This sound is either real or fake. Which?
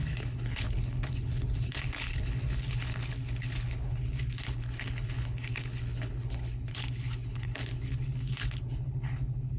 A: fake